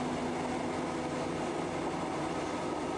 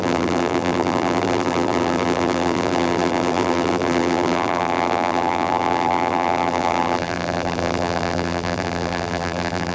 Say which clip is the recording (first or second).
first